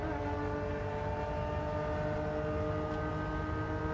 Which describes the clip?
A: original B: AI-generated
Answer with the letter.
A